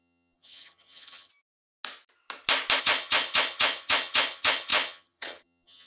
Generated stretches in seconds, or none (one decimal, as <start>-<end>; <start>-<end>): 0.0-1.3; 2.8-5.9